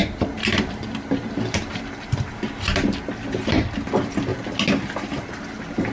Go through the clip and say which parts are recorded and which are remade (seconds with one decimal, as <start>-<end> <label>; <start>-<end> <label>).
0.0-5.9 recorded